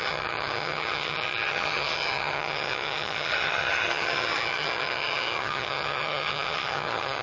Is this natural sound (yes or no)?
no